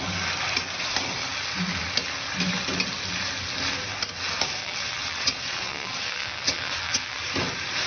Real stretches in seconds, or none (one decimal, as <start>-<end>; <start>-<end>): 0.0-4.6; 7.2-7.9